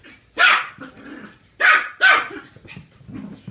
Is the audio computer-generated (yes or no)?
no